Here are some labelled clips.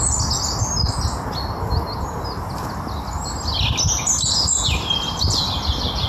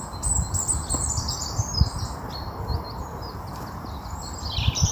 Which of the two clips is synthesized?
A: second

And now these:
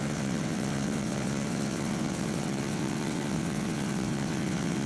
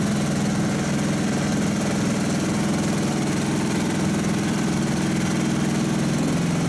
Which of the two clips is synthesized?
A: first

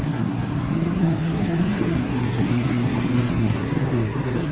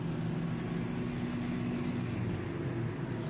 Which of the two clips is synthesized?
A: first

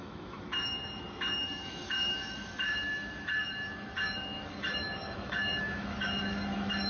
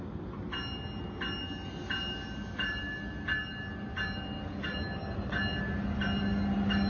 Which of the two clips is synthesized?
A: first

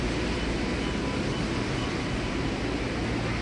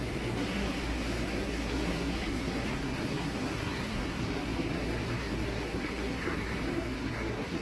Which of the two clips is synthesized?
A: second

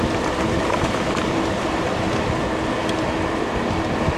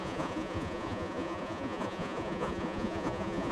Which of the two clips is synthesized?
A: second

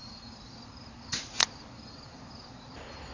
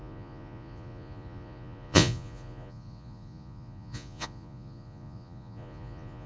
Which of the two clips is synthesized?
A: second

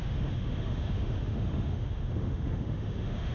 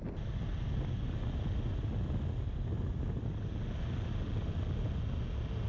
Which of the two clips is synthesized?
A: first